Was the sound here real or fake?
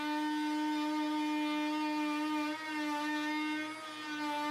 real